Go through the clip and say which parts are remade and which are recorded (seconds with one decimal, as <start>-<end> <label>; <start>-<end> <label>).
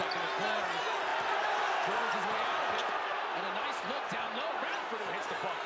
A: 0.0-5.7 recorded